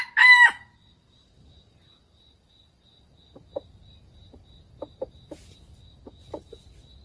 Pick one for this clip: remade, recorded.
recorded